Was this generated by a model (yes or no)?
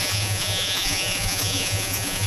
yes